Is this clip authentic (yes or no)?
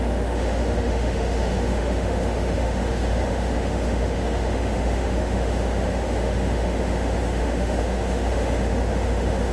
no